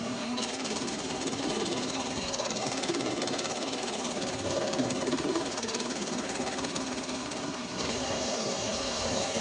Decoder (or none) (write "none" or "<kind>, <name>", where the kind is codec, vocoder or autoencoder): codec, SNAC